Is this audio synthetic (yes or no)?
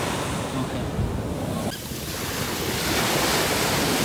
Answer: no